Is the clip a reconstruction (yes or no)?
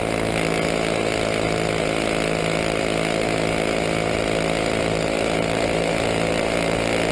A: no